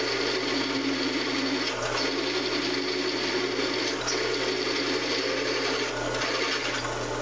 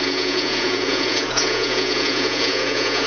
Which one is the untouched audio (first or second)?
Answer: first